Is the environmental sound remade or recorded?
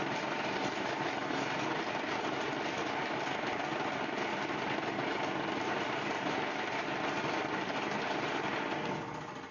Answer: recorded